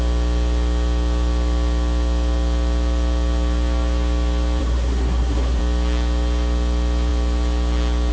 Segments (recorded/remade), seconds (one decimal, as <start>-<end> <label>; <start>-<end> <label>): 0.0-4.6 recorded; 4.6-5.6 remade; 5.6-8.1 recorded